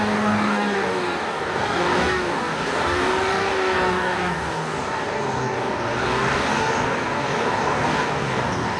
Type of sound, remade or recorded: remade